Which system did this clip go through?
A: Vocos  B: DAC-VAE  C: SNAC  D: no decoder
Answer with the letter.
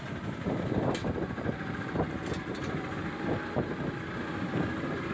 D